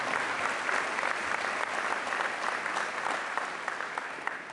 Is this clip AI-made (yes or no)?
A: no